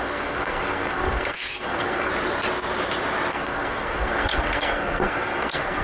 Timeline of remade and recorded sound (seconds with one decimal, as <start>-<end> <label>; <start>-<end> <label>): 0.0-2.1 remade; 2.1-3.3 recorded; 3.3-5.8 remade